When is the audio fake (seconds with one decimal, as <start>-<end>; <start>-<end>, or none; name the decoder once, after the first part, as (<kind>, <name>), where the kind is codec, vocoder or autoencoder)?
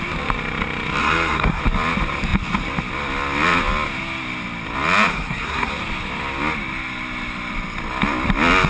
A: 1.0-1.6 (codec, SNAC); 5.1-5.7